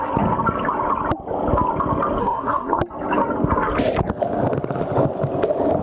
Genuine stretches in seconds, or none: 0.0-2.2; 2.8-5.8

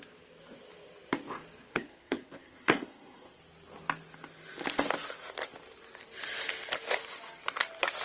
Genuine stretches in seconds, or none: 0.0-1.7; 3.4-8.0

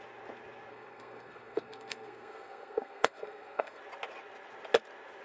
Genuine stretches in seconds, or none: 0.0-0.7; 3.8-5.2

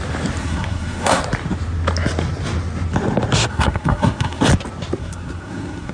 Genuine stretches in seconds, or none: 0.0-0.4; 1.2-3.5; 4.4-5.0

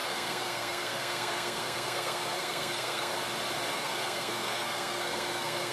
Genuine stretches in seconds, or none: 3.1-3.7

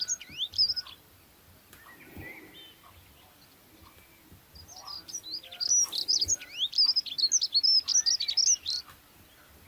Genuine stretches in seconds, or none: 0.0-9.7